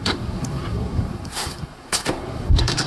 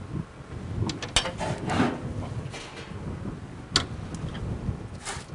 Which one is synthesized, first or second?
first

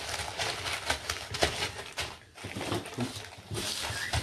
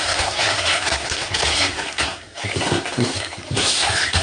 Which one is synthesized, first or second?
second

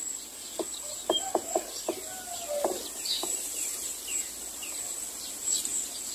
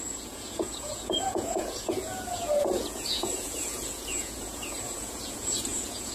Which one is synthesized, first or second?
second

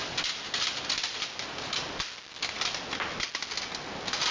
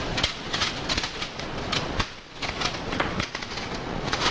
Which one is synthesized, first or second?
second